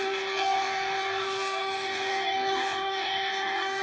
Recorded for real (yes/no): no